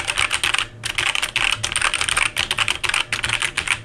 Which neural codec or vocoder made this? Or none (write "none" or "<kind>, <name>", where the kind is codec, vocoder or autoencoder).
none